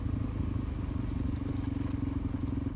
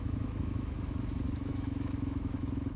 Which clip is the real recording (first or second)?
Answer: first